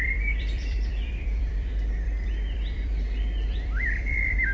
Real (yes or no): no